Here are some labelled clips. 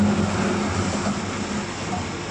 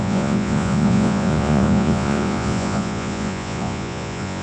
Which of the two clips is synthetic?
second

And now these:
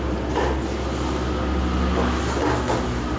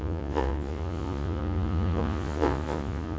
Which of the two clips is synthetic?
second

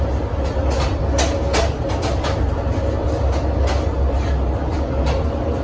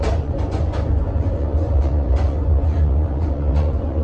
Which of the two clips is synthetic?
second